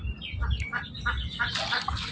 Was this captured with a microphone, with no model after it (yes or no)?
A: yes